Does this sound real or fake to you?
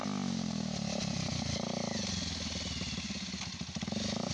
real